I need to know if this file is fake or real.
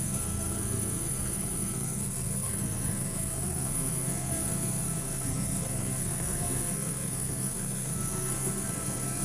fake